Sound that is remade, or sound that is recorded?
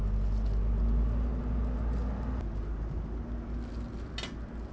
recorded